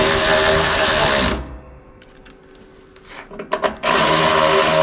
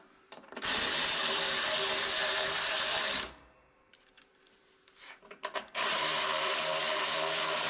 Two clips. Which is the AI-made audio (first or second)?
second